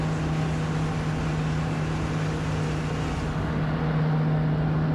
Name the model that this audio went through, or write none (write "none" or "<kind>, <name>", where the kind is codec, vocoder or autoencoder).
none